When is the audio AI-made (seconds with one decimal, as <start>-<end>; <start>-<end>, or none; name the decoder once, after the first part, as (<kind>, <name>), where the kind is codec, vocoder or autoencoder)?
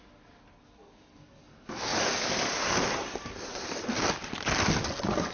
none